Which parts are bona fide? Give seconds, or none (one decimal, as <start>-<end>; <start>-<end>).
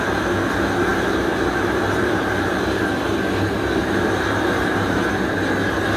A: 0.0-0.9; 2.8-3.8; 5.0-6.0